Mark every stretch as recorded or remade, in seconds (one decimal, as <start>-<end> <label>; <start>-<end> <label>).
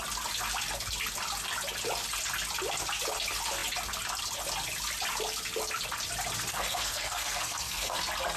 0.0-6.5 recorded; 6.5-8.0 remade; 8.0-8.4 recorded